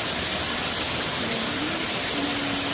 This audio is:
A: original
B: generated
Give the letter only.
A